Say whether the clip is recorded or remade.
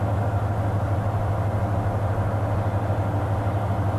recorded